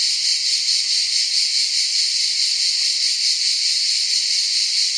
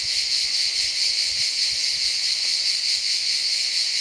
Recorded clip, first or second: first